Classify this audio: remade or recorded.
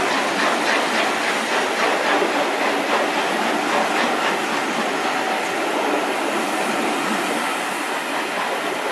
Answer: recorded